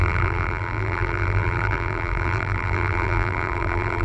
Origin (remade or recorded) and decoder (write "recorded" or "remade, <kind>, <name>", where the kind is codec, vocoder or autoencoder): remade, vocoder, BigVGAN v2